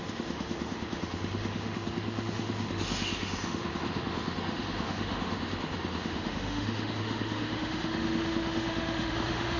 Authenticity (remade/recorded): remade